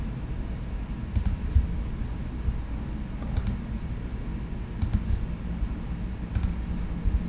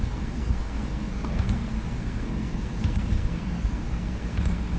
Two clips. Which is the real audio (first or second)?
first